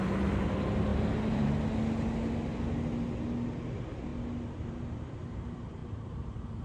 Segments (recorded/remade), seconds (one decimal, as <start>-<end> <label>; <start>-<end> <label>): 0.0-0.9 recorded; 0.9-1.5 remade; 1.5-5.8 recorded; 5.8-6.6 remade

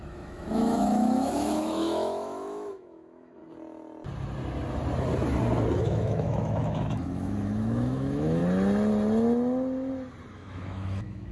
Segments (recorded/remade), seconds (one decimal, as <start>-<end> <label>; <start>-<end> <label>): 0.0-3.4 remade; 3.4-5.8 recorded; 5.8-8.4 remade; 8.4-10.3 recorded; 10.3-11.3 remade